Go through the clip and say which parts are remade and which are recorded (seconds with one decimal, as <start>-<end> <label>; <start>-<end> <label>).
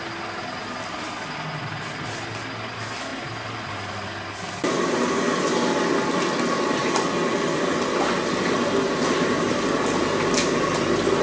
0.0-11.2 recorded